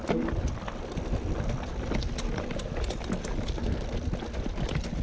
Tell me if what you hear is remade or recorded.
recorded